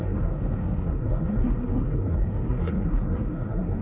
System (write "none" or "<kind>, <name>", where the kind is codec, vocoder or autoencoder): codec, SNAC